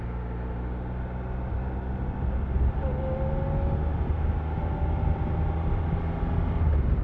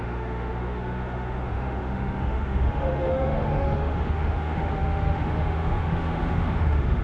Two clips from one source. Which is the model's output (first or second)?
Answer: second